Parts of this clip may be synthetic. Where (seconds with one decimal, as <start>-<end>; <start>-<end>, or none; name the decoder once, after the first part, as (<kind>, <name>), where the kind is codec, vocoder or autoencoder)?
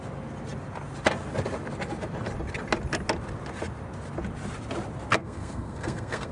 5.2-6.3 (codec, SNAC)